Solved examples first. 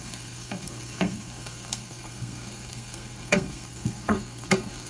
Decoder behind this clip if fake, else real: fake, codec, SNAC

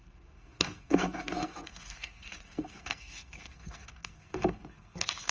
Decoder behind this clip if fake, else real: fake, codec, SNAC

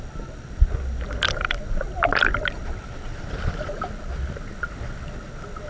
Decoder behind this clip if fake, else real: real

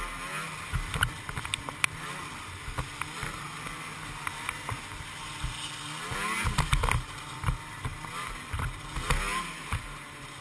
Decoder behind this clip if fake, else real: real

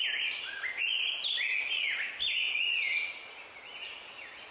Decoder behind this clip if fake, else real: real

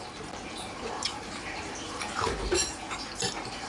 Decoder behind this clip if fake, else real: fake, vocoder, BigVGAN v2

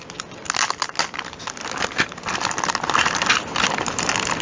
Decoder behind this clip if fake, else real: real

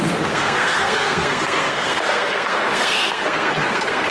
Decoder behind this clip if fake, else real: fake, codec, SNAC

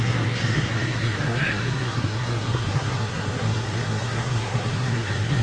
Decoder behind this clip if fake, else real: fake, codec, SNAC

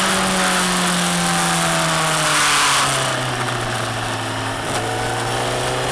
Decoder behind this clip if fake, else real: real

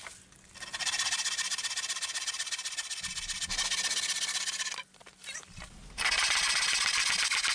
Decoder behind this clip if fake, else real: real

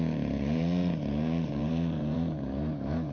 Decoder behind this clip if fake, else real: fake, vocoder, Vocos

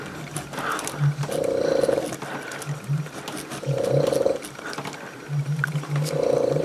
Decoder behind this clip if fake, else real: real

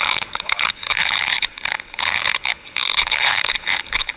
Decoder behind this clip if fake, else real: fake, codec, HILCodec